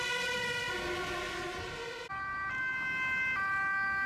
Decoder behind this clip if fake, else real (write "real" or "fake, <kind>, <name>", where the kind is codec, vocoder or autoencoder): real